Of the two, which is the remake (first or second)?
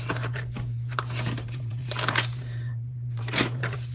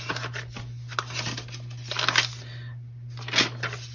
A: first